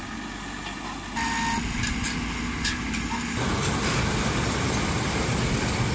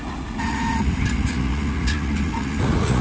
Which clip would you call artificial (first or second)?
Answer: second